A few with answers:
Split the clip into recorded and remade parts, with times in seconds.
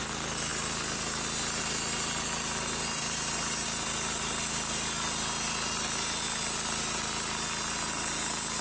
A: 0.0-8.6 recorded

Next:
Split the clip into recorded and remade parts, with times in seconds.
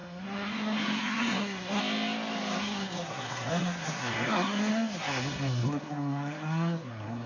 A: 0.0-1.8 remade; 1.8-2.6 recorded; 2.6-7.3 remade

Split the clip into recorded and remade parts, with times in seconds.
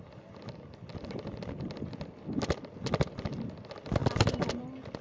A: 0.0-5.0 recorded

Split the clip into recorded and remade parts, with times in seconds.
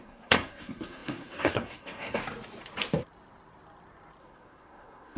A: 0.0-2.2 remade; 2.2-4.2 recorded; 4.2-5.2 remade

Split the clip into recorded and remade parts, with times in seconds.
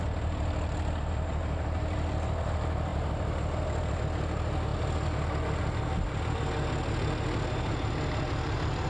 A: 0.0-8.9 recorded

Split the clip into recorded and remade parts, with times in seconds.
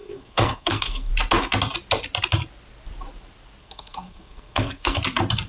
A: 0.0-1.1 remade; 1.1-3.6 recorded; 3.6-5.0 remade; 5.0-5.5 recorded